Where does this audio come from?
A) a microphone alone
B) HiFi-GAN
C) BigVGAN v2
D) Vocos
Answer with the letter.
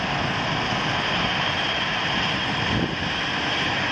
A